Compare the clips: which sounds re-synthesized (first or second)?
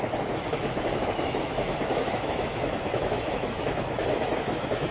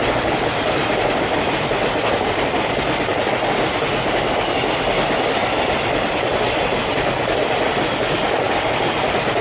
first